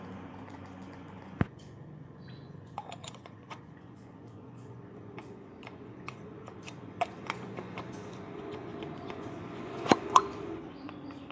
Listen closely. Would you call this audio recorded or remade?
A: remade